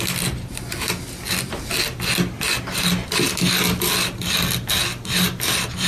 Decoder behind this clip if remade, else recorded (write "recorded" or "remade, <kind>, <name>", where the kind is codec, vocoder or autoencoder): recorded